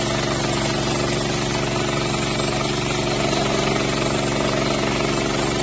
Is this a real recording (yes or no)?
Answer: yes